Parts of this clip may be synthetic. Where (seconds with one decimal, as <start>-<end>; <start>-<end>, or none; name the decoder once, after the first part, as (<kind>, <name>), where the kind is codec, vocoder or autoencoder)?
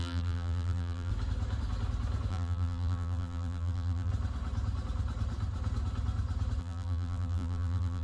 0.0-1.1 (vocoder, BigVGAN v2); 2.3-4.1; 6.6-8.0